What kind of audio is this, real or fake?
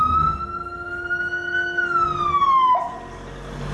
real